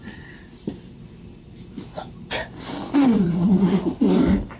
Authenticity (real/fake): fake